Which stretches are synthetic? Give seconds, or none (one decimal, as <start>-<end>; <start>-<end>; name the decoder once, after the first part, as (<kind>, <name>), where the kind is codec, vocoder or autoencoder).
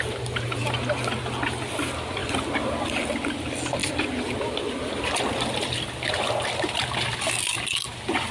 2.2-3.1 (vocoder, BigVGAN v2); 3.8-6.1